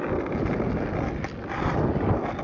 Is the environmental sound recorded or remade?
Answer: recorded